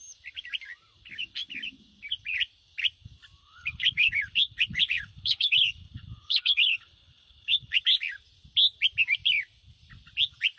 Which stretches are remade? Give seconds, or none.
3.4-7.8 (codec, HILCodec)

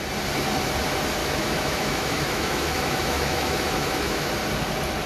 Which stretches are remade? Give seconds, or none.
1.2-4.3 (autoencoder, DAC-VAE)

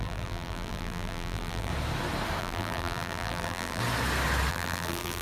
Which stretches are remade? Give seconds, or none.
0.0-1.7 (vocoder, BigVGAN v2); 2.4-3.8; 4.5-5.2

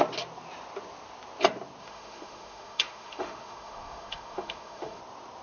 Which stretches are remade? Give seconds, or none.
1.8-5.0 (autoencoder, DAC-VAE)

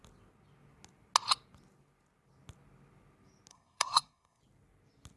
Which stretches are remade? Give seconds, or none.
3.5-4.4 (codec, SNAC)

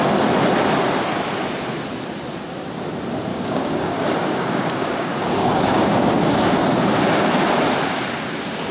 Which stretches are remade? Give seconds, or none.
3.3-6.5 (codec, DAC)

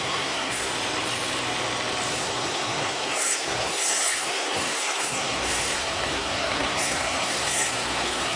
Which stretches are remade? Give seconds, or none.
0.0-0.7 (codec, SNAC); 2.1-8.4

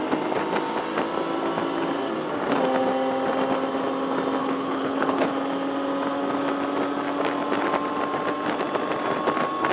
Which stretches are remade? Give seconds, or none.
4.4-5.3 (codec, HILCodec)